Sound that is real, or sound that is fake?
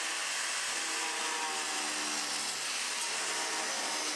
real